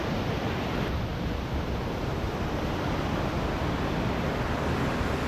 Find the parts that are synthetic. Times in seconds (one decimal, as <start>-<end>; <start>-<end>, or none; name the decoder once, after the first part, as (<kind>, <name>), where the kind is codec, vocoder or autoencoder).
none